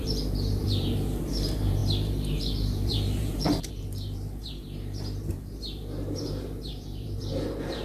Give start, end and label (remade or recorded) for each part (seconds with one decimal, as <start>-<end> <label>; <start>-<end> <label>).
0.0-7.8 remade